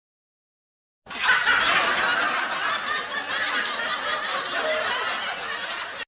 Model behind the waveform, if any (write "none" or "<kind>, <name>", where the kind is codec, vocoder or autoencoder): none